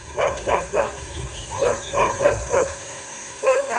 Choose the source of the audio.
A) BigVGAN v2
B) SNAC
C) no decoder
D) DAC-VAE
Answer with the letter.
B